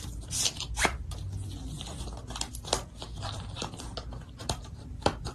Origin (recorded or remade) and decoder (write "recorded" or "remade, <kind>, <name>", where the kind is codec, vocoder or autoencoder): recorded